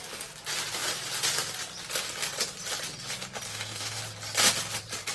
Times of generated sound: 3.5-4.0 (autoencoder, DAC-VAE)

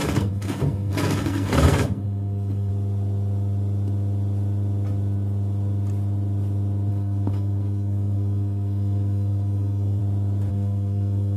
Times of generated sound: 0.0-2.7 (codec, SNAC); 6.9-10.0; 10.5-11.4

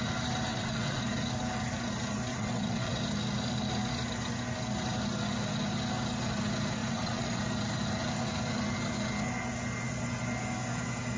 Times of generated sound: 0.5-1.0 (vocoder, WaveNeXt); 2.3-3.0; 6.8-7.4

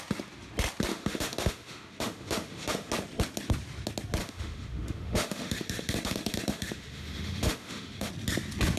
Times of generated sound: 0.9-2.9 (autoencoder, DAC-VAE); 4.2-8.1

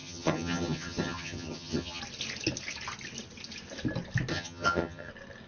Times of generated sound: 0.0-2.0 (vocoder, HiFi-GAN); 4.3-5.1

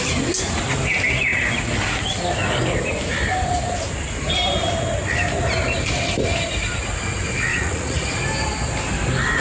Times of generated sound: 7.5-8.2 (vocoder, Vocos)